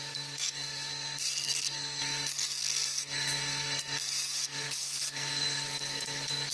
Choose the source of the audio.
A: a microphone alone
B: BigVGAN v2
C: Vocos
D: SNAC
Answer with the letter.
D